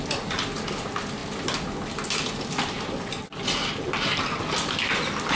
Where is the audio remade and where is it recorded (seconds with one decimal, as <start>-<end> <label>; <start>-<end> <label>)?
0.0-5.3 recorded